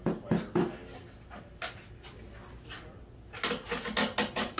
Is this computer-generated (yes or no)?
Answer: no